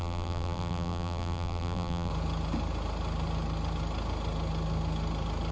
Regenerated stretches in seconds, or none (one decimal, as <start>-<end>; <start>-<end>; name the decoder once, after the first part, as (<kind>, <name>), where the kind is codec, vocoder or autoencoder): 0.0-2.1 (vocoder, BigVGAN v2)